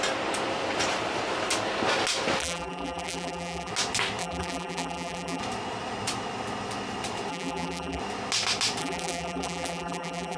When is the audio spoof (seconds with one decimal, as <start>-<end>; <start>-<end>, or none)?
2.4-3.7; 4.2-5.4; 7.3-8.0; 8.8-10.4